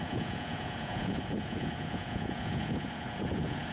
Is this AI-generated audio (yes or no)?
yes